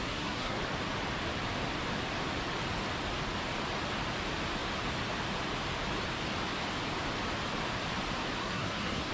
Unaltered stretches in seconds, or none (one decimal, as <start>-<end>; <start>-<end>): 0.6-8.4

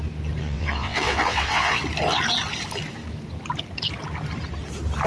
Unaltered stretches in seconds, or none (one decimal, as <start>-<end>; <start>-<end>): 0.0-0.4; 1.8-5.1

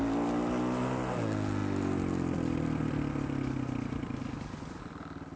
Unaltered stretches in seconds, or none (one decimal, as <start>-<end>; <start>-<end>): 0.0-5.4

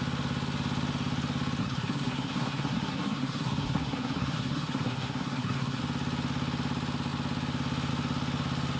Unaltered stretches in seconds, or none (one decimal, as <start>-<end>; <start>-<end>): 0.0-1.6; 5.8-8.8